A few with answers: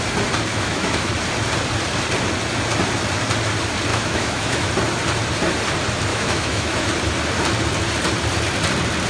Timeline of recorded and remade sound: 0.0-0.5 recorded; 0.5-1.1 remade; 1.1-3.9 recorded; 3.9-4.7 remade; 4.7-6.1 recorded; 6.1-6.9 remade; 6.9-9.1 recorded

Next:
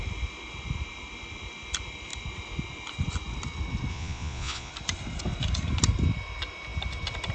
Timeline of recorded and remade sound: 0.0-3.9 recorded; 3.9-4.7 remade; 4.7-7.3 recorded

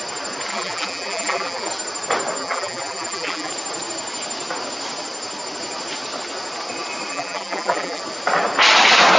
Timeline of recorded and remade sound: 0.0-0.5 recorded; 0.5-1.7 remade; 1.7-2.4 recorded; 2.4-3.5 remade; 3.5-7.1 recorded; 7.1-8.0 remade; 8.0-9.2 recorded

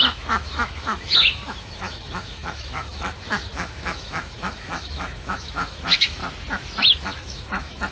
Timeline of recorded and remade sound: 0.0-6.2 remade; 6.2-6.8 recorded; 6.8-7.9 remade

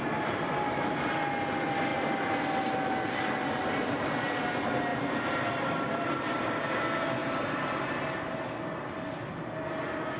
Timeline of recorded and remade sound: 0.0-4.9 recorded; 4.9-6.8 remade; 6.8-7.2 recorded; 7.2-8.1 remade; 8.1-10.2 recorded

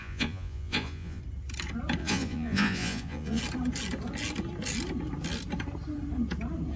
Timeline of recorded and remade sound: 0.0-1.2 remade; 1.2-2.0 recorded; 2.0-3.4 remade; 3.4-6.8 recorded

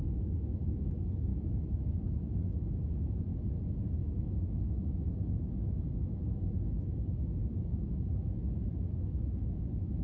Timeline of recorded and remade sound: 0.0-3.3 remade; 3.3-3.9 recorded; 3.9-10.0 remade

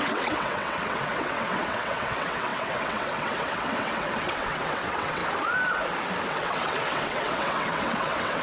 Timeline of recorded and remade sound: 0.0-5.2 remade; 5.2-6.3 recorded; 6.3-8.4 remade